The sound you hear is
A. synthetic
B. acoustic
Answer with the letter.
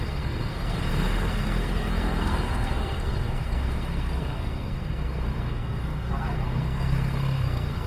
A